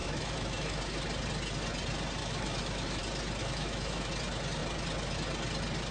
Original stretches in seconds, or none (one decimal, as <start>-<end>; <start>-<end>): 0.8-2.2; 3.0-3.4; 4.1-5.9